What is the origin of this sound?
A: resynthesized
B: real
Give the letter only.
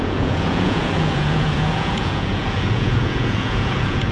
A